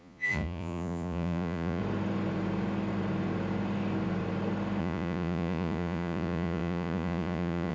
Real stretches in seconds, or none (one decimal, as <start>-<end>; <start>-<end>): 1.8-4.8